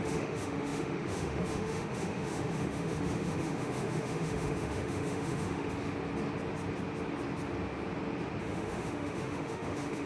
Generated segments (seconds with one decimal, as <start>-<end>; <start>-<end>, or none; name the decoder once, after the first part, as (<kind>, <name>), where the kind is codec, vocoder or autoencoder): 0.0-5.7 (autoencoder, DAC-VAE); 8.4-10.1